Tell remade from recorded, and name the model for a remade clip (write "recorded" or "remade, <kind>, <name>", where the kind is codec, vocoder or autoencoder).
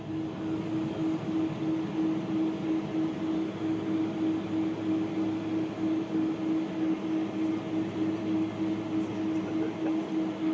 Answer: recorded